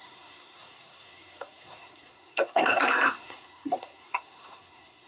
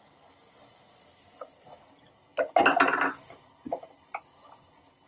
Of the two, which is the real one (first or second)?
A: second